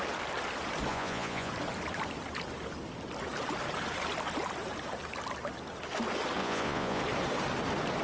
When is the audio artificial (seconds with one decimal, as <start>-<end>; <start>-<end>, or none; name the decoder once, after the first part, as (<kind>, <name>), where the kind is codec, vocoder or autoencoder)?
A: 0.9-1.5 (vocoder, Vocos); 6.4-7.0